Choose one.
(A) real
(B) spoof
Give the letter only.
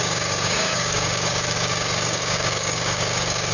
B